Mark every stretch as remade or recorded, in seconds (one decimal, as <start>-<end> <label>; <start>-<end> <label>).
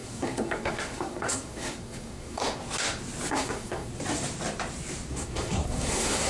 0.0-2.6 remade; 2.6-3.3 recorded; 3.3-3.9 remade; 3.9-5.1 recorded; 5.1-6.3 remade